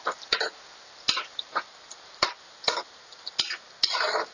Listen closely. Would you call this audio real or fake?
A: fake